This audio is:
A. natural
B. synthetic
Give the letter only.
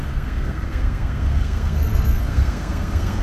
B